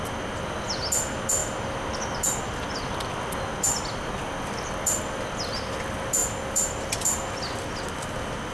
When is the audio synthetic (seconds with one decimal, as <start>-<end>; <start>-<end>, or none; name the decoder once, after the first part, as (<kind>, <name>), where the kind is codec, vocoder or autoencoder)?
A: none